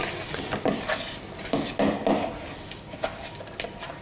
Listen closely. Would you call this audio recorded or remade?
recorded